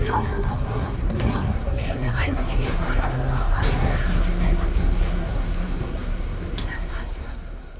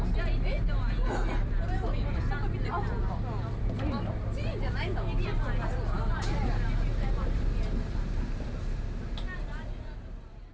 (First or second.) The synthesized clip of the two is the first